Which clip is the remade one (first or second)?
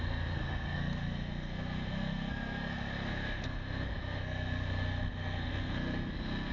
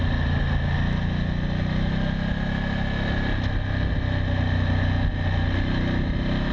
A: first